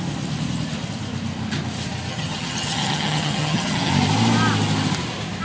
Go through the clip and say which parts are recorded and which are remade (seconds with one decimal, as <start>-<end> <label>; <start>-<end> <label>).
0.0-2.1 recorded; 2.1-3.9 remade; 3.9-5.4 recorded